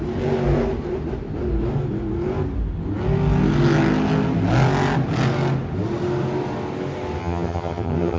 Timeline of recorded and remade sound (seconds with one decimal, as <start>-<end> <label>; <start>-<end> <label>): 0.0-7.2 recorded; 7.2-8.2 remade